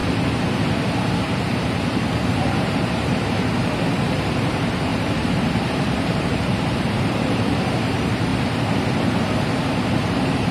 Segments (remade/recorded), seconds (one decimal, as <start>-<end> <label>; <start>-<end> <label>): 0.0-1.2 recorded; 1.2-8.3 remade; 8.3-10.1 recorded; 10.1-10.5 remade